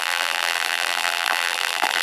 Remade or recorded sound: remade